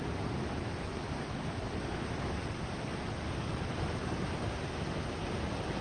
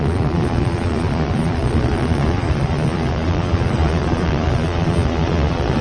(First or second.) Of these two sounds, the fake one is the second